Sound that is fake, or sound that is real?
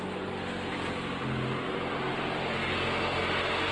real